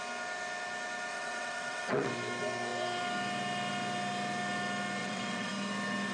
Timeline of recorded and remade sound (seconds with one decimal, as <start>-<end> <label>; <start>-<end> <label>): 0.0-1.1 recorded; 1.1-2.1 remade; 2.1-5.0 recorded; 5.0-5.5 remade; 5.5-6.1 recorded